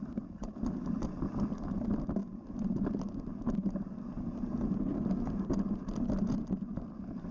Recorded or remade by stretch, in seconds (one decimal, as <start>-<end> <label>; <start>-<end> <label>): 0.0-2.2 recorded; 2.2-2.7 remade; 2.7-7.3 recorded